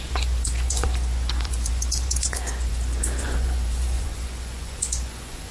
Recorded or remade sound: remade